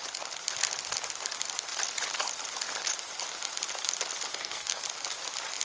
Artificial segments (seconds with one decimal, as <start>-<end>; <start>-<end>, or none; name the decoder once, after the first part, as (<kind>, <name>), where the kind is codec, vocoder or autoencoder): 4.3-4.8 (codec, SNAC)